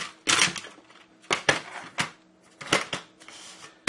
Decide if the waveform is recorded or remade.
recorded